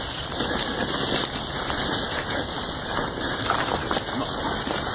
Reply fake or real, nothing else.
real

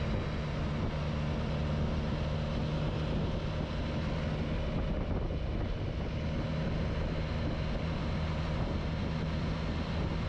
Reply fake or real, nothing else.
real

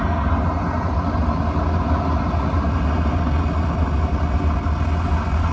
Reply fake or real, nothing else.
real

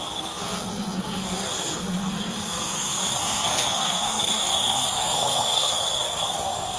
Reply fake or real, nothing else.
fake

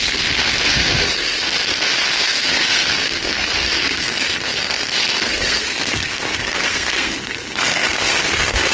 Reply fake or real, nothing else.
fake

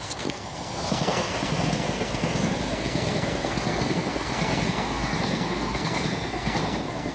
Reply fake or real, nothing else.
fake